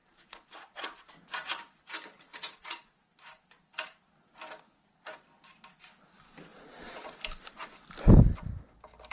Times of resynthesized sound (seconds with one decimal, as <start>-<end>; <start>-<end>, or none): 0.0-1.1; 2.3-3.1; 6.5-7.2